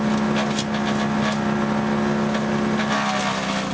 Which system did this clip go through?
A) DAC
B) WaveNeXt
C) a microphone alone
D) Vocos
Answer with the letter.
C